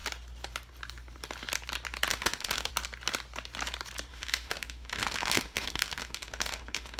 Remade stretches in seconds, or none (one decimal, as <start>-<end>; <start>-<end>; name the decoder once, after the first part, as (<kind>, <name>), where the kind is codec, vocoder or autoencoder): 2.1-2.7 (autoencoder, DAC-VAE); 4.1-7.0